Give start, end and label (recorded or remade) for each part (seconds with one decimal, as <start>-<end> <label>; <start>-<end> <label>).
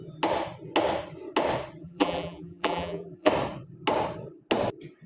0.0-1.8 recorded; 1.8-3.3 remade; 3.3-5.1 recorded